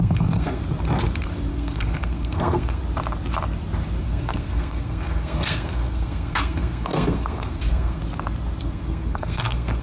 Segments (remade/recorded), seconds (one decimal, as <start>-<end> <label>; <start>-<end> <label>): 0.0-0.6 remade; 0.6-1.5 recorded; 1.5-2.8 remade; 2.8-4.0 recorded; 4.0-8.0 remade; 8.0-8.6 recorded; 8.6-9.8 remade